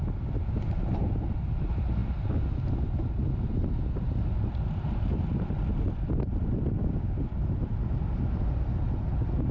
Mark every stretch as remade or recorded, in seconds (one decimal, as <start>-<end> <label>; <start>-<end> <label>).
0.0-6.8 recorded; 6.8-7.3 remade; 7.3-9.5 recorded

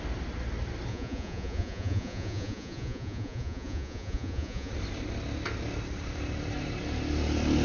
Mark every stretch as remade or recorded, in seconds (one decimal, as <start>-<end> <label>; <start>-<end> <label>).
0.0-0.9 recorded; 0.9-4.7 remade; 4.7-7.6 recorded

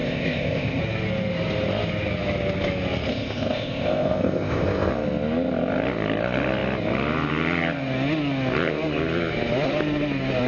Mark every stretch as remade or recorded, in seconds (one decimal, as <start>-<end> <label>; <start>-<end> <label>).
0.0-0.8 remade; 0.8-3.1 recorded; 3.1-4.9 remade; 4.9-10.5 recorded

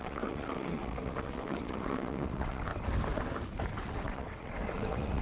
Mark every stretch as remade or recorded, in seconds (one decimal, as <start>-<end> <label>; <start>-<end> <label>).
0.0-2.7 remade; 2.7-3.8 recorded; 3.8-5.2 remade

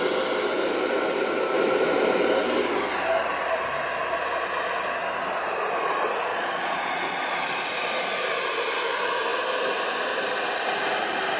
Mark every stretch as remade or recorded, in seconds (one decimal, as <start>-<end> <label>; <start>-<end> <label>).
0.0-6.3 recorded; 6.3-7.4 remade; 7.4-11.4 recorded